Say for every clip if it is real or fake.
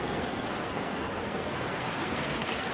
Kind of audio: fake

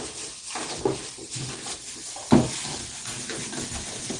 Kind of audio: real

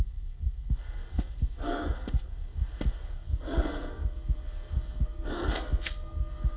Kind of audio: fake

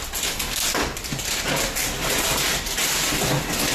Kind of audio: real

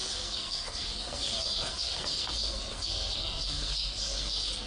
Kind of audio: fake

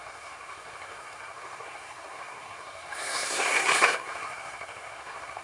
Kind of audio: fake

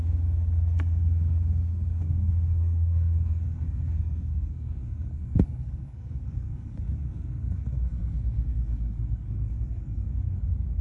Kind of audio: fake